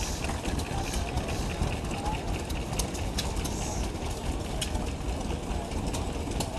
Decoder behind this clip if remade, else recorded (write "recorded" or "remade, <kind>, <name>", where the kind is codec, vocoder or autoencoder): recorded